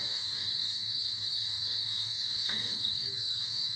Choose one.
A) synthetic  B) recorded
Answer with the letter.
A